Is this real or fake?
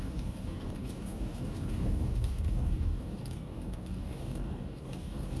fake